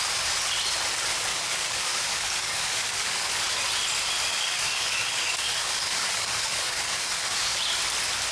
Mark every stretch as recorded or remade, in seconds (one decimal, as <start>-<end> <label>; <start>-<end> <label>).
0.0-1.3 recorded; 1.3-3.3 remade; 3.3-4.3 recorded; 4.3-7.6 remade; 7.6-8.3 recorded

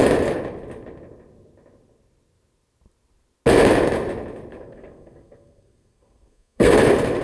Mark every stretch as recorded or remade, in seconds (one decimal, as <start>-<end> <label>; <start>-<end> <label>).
0.0-4.5 recorded; 4.5-6.7 remade; 6.7-7.2 recorded